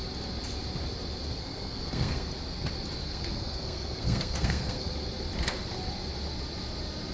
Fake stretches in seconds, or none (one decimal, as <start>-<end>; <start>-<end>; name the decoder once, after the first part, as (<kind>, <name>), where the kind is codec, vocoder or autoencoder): 1.4-2.3 (codec, SNAC); 3.0-4.9